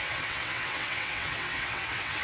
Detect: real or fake fake